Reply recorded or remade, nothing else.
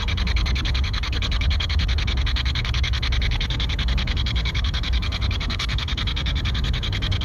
remade